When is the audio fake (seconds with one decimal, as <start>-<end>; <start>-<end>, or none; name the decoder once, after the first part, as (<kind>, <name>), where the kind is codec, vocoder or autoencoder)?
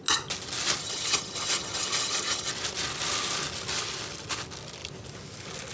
0.8-2.5 (vocoder, HiFi-GAN)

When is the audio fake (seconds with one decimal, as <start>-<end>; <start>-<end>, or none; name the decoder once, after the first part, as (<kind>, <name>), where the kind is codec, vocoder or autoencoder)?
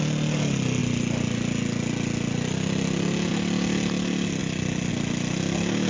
none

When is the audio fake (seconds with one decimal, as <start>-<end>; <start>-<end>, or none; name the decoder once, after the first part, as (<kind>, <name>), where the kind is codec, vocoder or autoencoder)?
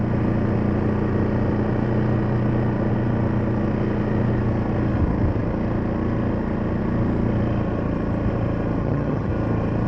8.8-9.3 (vocoder, HiFi-GAN)